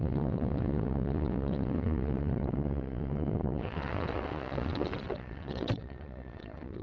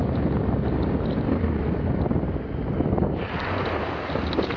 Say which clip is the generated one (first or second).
first